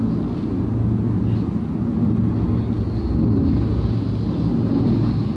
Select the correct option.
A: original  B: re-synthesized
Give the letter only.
A